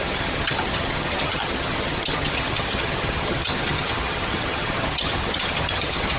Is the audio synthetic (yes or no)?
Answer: yes